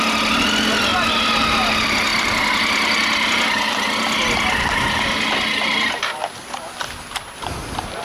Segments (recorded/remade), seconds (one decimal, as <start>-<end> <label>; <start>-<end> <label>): 0.0-8.0 recorded